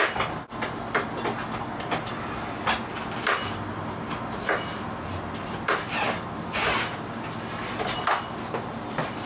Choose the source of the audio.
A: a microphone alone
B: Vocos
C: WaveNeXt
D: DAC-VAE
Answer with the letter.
A